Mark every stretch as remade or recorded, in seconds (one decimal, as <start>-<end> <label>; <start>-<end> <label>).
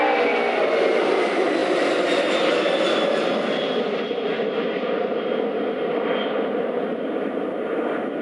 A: 0.0-8.2 recorded